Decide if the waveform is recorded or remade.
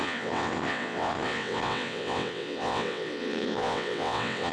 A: remade